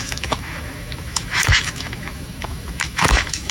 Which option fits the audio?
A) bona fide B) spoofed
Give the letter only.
B